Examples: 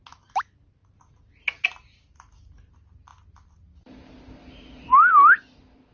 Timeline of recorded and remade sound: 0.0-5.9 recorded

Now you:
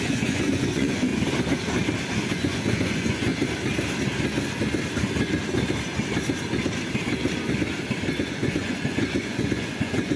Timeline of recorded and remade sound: 0.0-1.1 remade; 1.1-2.3 recorded; 2.3-3.3 remade; 3.3-8.2 recorded; 8.2-10.2 remade

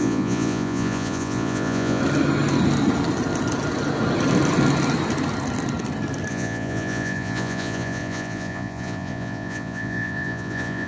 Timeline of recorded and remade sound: 0.0-2.0 remade; 2.0-6.3 recorded; 6.3-10.9 remade

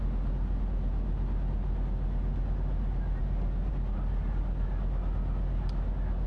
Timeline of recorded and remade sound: 0.0-6.3 recorded

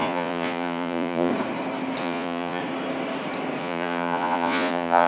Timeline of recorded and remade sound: 0.0-1.3 remade; 1.3-2.0 recorded; 2.0-2.6 remade; 2.6-3.6 recorded; 3.6-5.1 remade

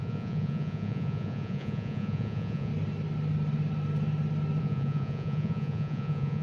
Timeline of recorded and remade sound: 0.0-2.7 remade; 2.7-4.6 recorded; 4.6-6.4 remade

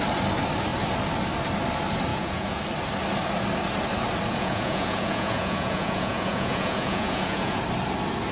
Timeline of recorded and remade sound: 0.0-2.1 recorded; 2.1-2.6 remade; 2.6-4.3 recorded; 4.3-7.6 remade; 7.6-8.3 recorded